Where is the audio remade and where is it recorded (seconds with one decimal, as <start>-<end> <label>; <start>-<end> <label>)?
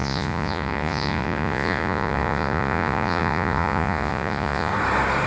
0.0-4.7 remade; 4.7-5.3 recorded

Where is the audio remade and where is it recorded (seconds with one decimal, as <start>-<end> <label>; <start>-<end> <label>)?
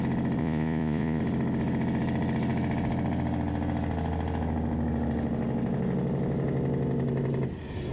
0.0-0.4 recorded; 0.4-1.2 remade; 1.2-7.9 recorded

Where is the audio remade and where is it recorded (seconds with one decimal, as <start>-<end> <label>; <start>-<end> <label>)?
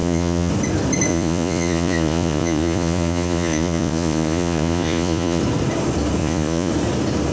0.0-0.5 remade; 0.5-1.1 recorded; 1.1-5.4 remade; 5.4-6.2 recorded; 6.2-6.7 remade; 6.7-7.3 recorded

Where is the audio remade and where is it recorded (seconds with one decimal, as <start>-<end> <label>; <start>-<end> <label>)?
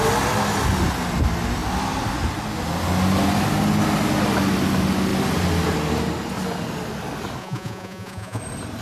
0.0-7.4 recorded; 7.4-8.4 remade; 8.4-8.8 recorded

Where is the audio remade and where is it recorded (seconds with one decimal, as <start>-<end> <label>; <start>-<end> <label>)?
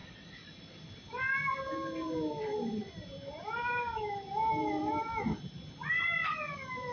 0.0-6.9 recorded